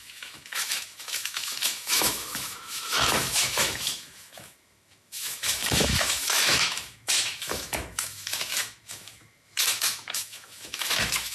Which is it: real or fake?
fake